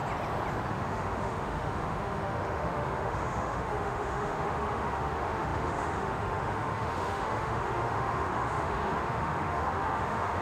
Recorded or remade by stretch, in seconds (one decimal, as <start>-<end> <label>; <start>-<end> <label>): 0.0-0.7 recorded; 0.7-10.4 remade